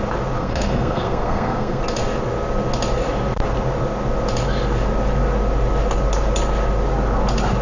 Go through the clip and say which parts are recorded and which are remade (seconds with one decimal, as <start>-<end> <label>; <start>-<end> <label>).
0.0-0.4 recorded; 0.4-1.8 remade; 1.8-7.6 recorded